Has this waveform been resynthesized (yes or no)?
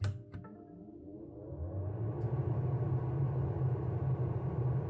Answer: no